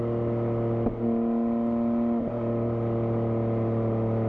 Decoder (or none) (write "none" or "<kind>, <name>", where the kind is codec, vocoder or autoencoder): none